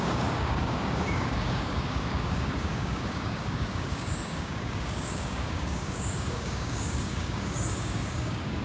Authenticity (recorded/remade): remade